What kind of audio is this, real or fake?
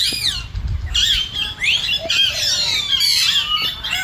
real